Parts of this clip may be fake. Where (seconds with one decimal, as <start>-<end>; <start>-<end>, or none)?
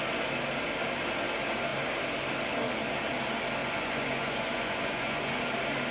3.6-5.4